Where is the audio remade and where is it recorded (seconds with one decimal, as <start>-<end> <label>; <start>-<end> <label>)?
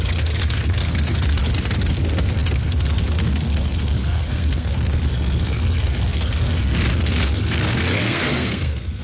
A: 0.0-1.4 remade; 1.4-1.9 recorded; 1.9-9.0 remade